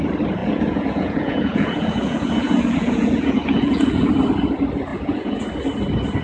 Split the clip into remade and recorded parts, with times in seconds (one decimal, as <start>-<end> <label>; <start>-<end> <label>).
0.0-0.4 recorded; 0.4-4.1 remade; 4.1-4.9 recorded; 4.9-5.4 remade; 5.4-6.2 recorded